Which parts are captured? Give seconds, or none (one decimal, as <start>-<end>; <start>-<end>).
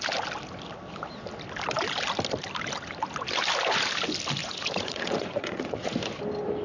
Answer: 0.0-4.4; 5.9-6.6